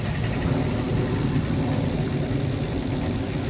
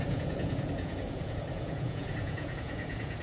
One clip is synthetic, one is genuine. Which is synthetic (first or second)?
second